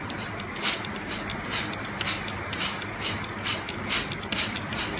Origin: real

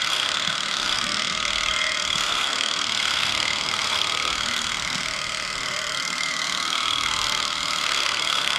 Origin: fake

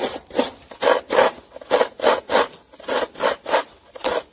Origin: real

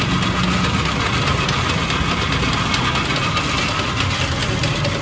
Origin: real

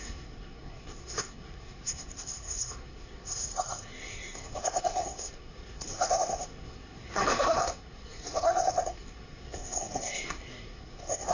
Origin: fake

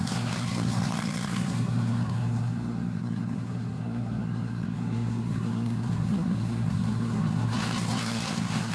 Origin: fake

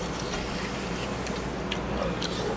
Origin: real